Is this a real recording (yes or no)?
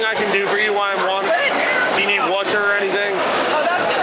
no